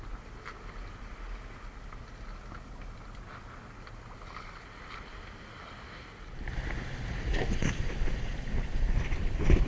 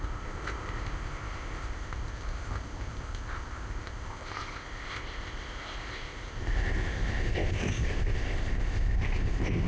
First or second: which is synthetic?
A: second